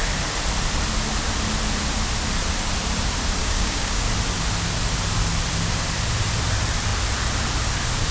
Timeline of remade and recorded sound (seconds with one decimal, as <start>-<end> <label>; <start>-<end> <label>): 0.0-3.4 recorded; 3.4-4.0 remade; 4.0-8.1 recorded